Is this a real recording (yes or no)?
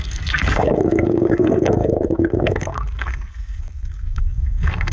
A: no